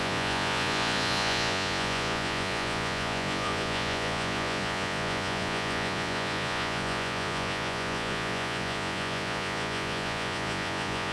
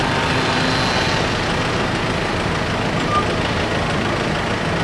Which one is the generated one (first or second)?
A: first